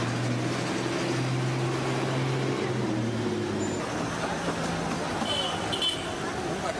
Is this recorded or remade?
recorded